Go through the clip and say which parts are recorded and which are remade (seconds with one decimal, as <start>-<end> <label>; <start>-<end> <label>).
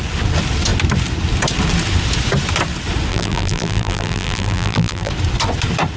0.0-3.1 recorded; 3.1-5.1 remade; 5.1-6.0 recorded